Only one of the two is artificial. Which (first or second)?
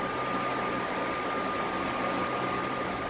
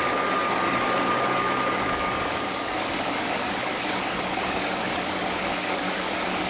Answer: second